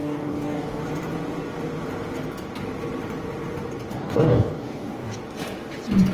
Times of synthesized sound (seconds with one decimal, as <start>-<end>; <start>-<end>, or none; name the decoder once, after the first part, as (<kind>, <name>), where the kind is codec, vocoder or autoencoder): 0.0-0.8 (codec, DAC); 3.9-5.2

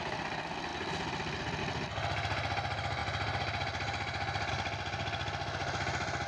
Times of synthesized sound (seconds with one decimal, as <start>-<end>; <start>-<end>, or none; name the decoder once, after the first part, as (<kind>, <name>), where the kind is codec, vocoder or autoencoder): none

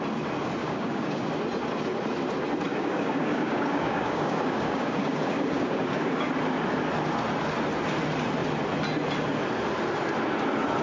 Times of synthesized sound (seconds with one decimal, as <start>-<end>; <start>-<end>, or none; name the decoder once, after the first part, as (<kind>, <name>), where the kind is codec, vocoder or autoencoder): 0.6-1.3 (codec, DAC); 2.7-6.3

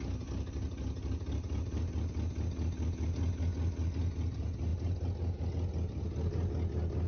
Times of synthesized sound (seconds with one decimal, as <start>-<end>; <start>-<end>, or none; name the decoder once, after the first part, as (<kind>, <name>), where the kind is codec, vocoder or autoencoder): none

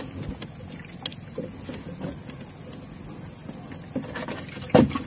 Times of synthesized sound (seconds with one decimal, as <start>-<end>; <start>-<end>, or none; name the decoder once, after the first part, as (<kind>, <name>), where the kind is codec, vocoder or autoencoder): none

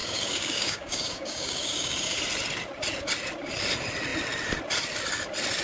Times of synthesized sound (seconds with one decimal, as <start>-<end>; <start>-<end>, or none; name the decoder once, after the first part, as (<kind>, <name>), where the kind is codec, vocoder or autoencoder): 0.0-2.2 (codec, DAC)